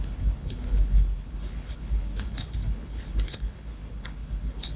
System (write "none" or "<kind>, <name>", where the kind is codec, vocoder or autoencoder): codec, HILCodec